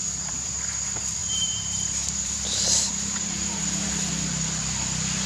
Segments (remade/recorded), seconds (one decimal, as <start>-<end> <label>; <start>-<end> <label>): 0.0-0.6 remade; 0.6-1.2 recorded; 1.2-4.1 remade; 4.1-5.3 recorded